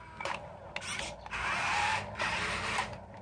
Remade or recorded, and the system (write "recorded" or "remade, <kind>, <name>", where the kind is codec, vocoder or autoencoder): recorded